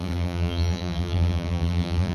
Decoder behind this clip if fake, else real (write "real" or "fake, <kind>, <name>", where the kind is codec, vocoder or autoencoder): fake, vocoder, BigVGAN v2